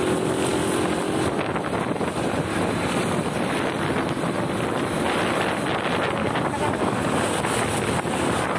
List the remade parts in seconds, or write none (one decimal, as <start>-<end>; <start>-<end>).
6.2-7.2